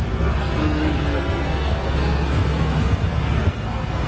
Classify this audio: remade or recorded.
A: remade